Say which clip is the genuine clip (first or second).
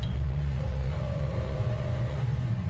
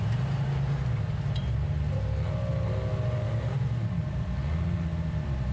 second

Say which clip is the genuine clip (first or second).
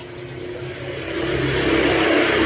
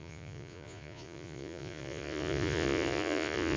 first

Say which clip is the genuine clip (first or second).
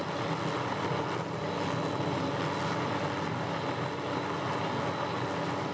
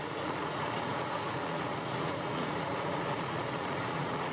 first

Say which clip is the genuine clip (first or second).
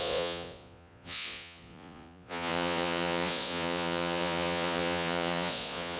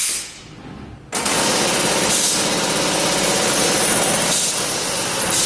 second